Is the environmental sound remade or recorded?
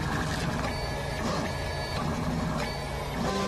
recorded